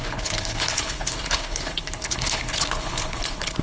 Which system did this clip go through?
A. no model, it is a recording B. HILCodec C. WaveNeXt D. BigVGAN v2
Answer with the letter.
B